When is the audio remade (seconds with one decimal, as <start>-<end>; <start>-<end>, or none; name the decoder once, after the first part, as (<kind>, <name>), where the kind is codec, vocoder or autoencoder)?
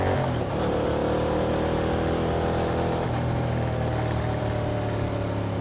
none